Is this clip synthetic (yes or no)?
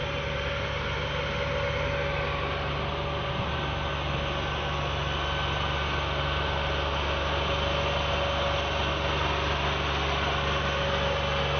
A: no